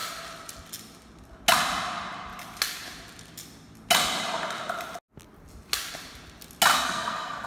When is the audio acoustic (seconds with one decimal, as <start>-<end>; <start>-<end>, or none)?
0.0-6.7